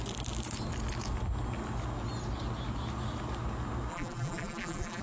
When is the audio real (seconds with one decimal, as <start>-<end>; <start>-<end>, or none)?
0.0-3.9